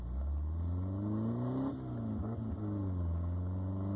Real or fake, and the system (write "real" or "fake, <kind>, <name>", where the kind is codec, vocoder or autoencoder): real